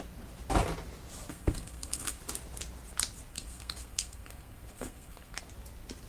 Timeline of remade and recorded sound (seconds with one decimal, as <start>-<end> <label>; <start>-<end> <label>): 0.0-1.3 recorded; 1.3-2.2 remade; 2.2-3.3 recorded; 3.3-5.4 remade; 5.4-6.1 recorded